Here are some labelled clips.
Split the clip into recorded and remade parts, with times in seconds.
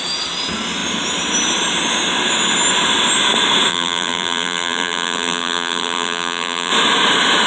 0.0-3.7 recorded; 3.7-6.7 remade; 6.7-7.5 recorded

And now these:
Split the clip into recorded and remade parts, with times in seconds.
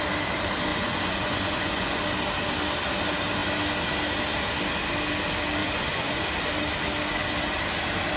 0.0-0.7 recorded; 0.7-2.0 remade; 2.0-5.6 recorded; 5.6-6.2 remade; 6.2-8.2 recorded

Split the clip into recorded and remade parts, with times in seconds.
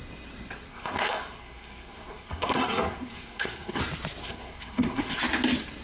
0.0-0.7 recorded; 0.7-3.8 remade; 3.8-4.2 recorded; 4.2-5.2 remade; 5.2-5.8 recorded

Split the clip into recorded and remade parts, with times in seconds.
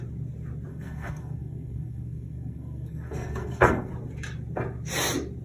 0.0-0.7 recorded; 0.7-3.9 remade; 3.9-5.4 recorded